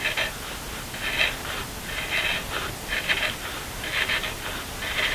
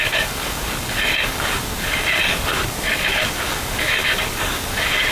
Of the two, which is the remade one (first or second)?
second